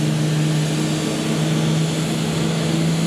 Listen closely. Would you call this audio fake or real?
real